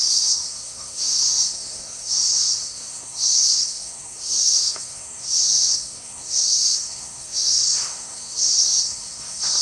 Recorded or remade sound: remade